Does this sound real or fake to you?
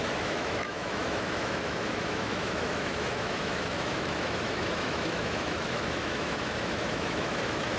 fake